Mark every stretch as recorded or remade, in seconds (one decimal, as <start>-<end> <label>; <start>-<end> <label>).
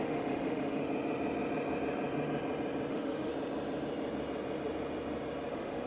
0.0-0.8 remade; 0.8-2.9 recorded; 2.9-3.3 remade; 3.3-5.5 recorded; 5.5-5.9 remade